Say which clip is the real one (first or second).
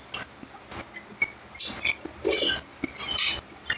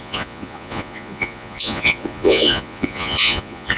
first